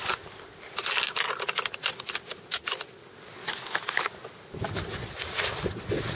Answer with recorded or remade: recorded